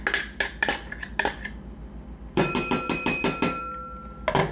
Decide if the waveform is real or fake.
real